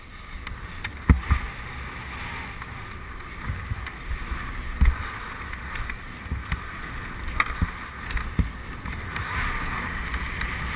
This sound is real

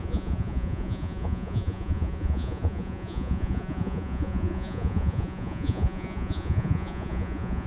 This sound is fake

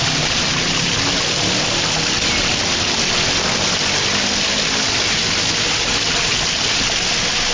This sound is real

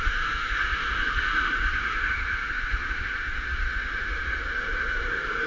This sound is fake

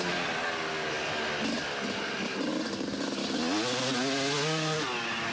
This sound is real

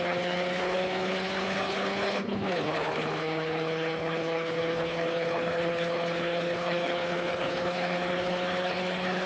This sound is fake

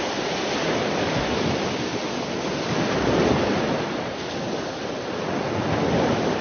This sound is real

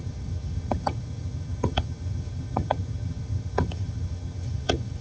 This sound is fake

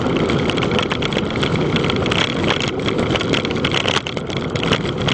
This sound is real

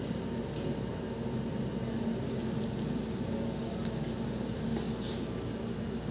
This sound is real